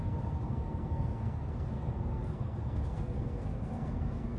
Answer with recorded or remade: remade